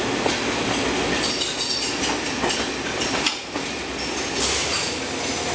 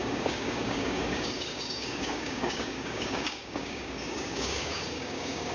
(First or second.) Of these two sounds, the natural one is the first